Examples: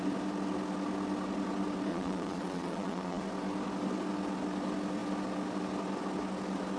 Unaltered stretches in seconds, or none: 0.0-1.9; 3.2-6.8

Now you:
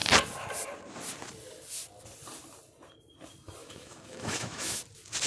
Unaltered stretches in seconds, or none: 0.0-3.6; 4.8-5.3

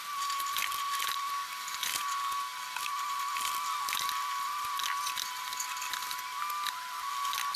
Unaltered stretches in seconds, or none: 0.0-7.6

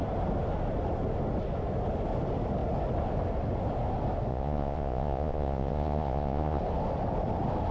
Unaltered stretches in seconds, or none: 0.0-4.3; 6.6-7.7

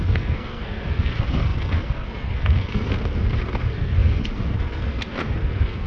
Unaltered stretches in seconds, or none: none

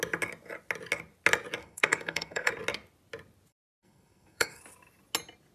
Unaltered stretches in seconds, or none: 0.0-1.6; 2.5-3.5; 4.6-5.5

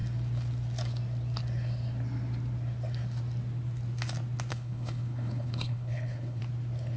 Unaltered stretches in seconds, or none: 0.0-4.5; 6.4-7.0